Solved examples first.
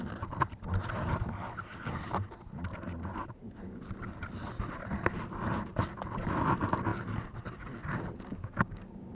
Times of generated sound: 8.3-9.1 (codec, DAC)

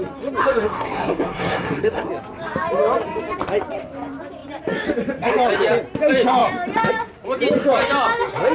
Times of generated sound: 0.4-2.1 (codec, SNAC)

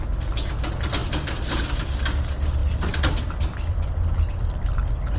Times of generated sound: 2.6-5.2 (vocoder, BigVGAN v2)

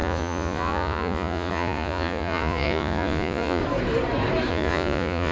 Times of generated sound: 0.0-3.6 (vocoder, Vocos); 4.5-5.3

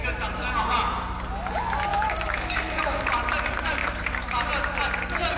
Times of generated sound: 1.9-3.1 (autoencoder, DAC-VAE); 3.8-4.5

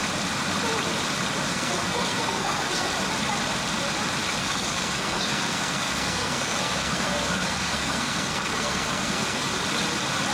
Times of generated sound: 1.5-2.9 (codec, SNAC); 4.4-9.5

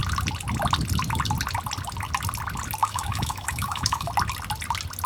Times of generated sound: 2.8-4.1 (autoencoder, DAC-VAE)